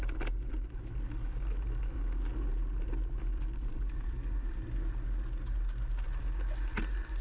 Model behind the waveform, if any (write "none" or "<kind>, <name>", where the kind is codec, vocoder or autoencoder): none